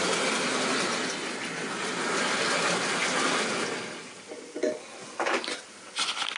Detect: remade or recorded recorded